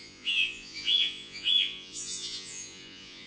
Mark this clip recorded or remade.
remade